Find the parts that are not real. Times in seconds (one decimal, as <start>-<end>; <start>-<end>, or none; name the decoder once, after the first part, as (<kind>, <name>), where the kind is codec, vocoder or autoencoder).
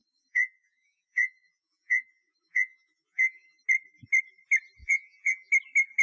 0.0-3.6 (vocoder, Vocos); 4.8-5.5